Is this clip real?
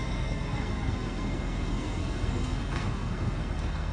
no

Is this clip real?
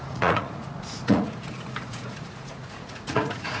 no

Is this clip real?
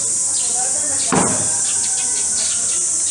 yes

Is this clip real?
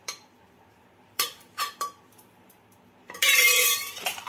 no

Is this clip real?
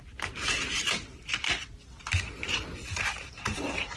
yes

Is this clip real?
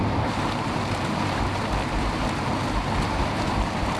no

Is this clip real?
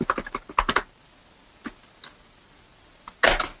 yes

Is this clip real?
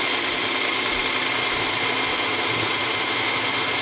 yes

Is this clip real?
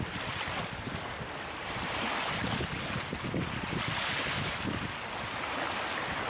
yes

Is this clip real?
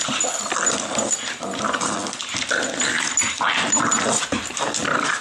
yes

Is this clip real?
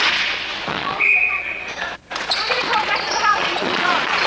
no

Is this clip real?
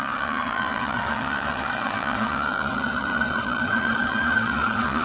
no